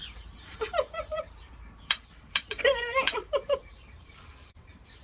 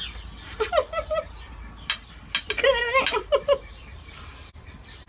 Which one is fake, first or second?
first